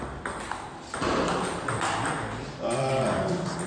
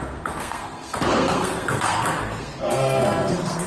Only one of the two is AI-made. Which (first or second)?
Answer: second